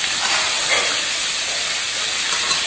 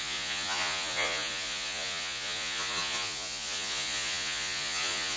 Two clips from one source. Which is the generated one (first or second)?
second